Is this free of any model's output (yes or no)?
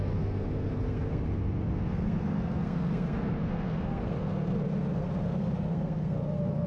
no